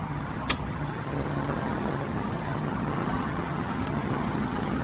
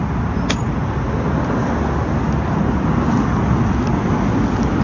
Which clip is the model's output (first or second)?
first